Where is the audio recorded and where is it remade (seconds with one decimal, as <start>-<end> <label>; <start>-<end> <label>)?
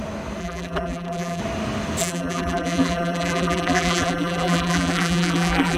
0.0-0.4 recorded; 0.4-1.4 remade; 1.4-2.0 recorded; 2.0-5.8 remade